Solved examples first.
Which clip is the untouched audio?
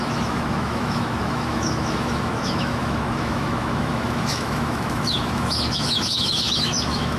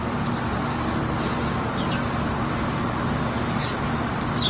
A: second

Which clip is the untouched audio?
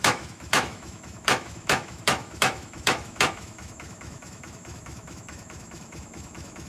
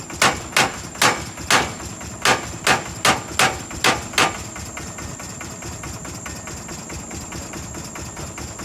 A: second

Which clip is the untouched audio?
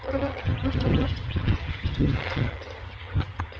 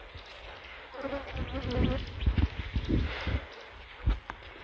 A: second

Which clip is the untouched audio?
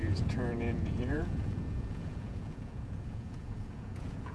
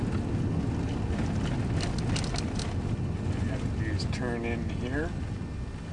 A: second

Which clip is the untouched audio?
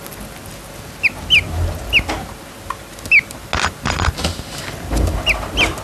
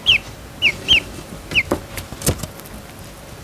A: first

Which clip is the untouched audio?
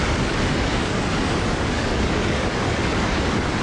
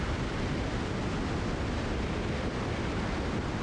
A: second